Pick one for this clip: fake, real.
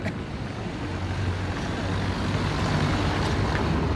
real